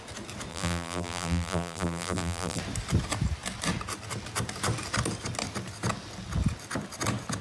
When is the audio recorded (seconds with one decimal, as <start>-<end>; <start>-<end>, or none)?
0.0-0.5; 2.6-7.4